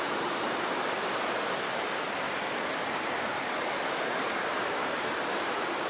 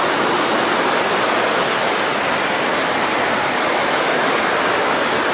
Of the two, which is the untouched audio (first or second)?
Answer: second